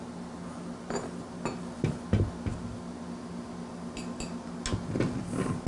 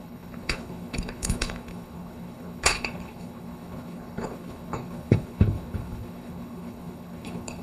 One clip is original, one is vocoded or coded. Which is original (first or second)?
first